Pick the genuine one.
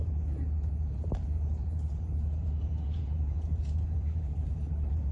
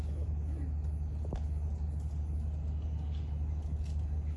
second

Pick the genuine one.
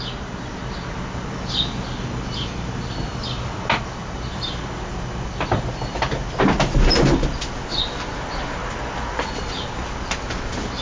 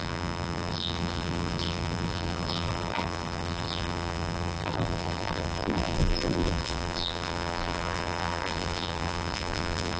first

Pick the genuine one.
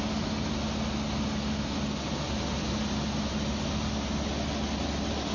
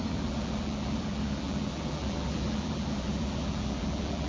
first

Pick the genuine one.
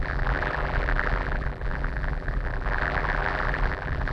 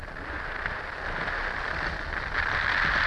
second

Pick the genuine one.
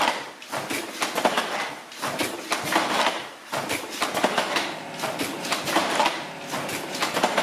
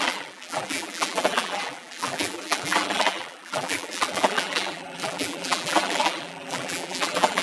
first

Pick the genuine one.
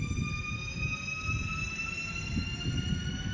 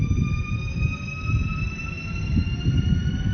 first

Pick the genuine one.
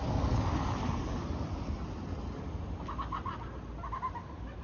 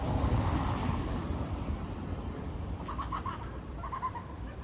first